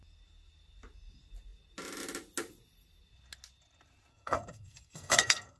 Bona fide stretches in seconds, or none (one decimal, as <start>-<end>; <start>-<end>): 0.0-4.1